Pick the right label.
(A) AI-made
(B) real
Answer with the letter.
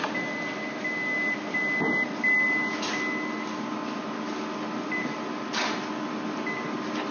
B